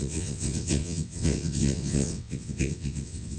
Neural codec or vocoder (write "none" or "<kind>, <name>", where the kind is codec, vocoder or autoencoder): vocoder, WaveNeXt